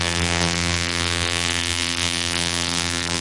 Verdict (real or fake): fake